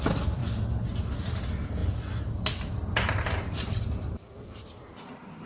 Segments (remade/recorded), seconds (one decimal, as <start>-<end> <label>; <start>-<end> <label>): 0.0-0.4 remade; 0.4-1.2 recorded; 1.2-5.5 remade

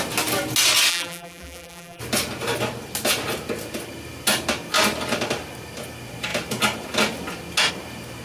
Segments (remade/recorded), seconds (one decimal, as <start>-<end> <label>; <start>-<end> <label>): 0.0-0.9 recorded; 0.9-2.0 remade; 2.0-8.2 recorded